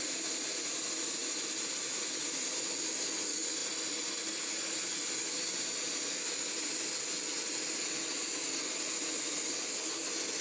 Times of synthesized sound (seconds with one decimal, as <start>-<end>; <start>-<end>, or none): none